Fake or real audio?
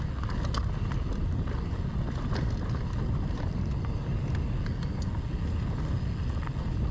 real